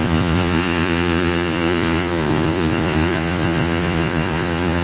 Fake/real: fake